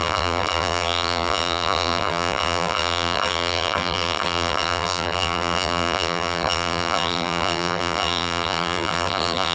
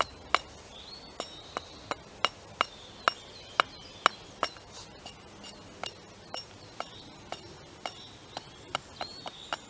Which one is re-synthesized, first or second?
first